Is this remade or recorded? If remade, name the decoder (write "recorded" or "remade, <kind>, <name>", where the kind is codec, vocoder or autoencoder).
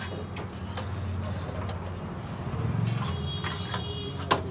recorded